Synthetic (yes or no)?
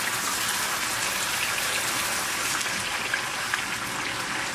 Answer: no